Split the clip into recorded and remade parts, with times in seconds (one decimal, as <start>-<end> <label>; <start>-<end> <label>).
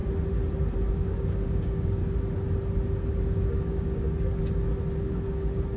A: 0.0-0.9 recorded; 0.9-2.0 remade; 2.0-3.1 recorded; 3.1-4.4 remade; 4.4-5.0 recorded; 5.0-5.8 remade